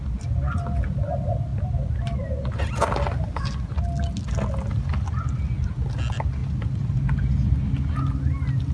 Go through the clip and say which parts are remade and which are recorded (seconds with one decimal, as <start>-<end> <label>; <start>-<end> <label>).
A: 0.0-8.7 recorded